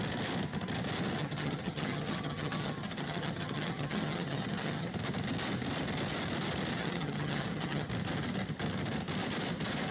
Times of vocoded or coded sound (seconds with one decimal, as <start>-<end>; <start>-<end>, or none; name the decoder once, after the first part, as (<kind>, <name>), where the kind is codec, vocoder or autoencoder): 1.2-4.9 (vocoder, HiFi-GAN); 6.7-7.9

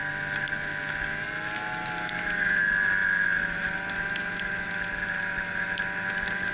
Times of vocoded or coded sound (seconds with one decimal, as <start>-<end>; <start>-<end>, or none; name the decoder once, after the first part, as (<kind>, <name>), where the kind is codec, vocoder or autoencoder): none

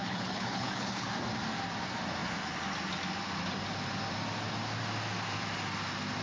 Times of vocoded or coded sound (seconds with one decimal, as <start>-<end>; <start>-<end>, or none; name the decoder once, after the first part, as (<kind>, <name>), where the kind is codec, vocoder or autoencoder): 0.0-1.1 (codec, HILCodec)

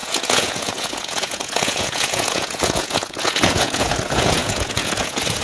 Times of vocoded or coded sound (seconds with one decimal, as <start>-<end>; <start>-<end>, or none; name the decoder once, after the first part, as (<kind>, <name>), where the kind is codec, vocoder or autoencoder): 0.0-5.4 (vocoder, Vocos)